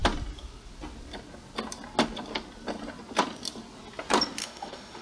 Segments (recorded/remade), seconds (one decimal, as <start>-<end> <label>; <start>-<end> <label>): 0.0-4.4 recorded; 4.4-5.0 remade